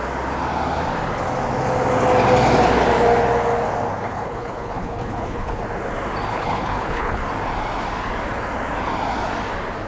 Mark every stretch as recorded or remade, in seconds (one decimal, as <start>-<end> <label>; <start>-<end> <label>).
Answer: 0.0-4.0 recorded; 4.0-5.6 remade; 5.6-6.3 recorded; 6.3-7.2 remade; 7.2-9.9 recorded